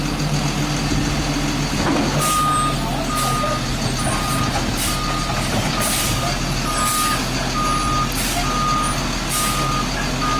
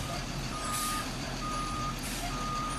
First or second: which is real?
first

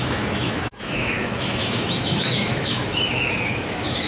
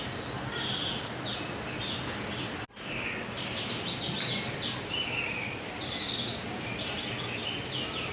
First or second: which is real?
second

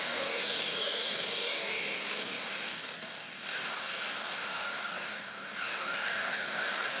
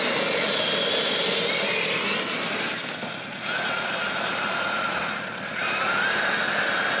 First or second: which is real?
second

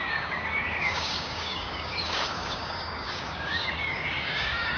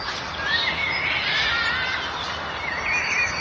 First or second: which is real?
second